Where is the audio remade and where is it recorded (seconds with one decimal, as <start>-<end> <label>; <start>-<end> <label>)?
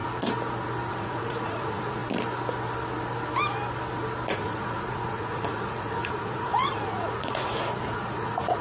0.0-0.9 recorded; 0.9-2.0 remade; 2.0-4.3 recorded; 4.3-8.6 remade